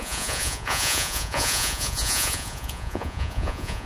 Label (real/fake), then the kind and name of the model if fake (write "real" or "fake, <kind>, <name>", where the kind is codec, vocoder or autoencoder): fake, vocoder, Vocos